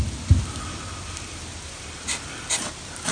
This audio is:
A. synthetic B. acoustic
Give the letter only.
B